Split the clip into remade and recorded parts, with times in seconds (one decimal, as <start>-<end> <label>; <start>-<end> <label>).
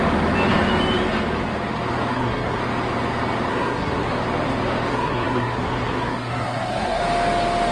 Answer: 0.0-2.1 recorded; 2.1-2.6 remade; 2.6-3.5 recorded; 3.5-4.1 remade; 4.1-4.9 recorded; 4.9-7.0 remade; 7.0-7.7 recorded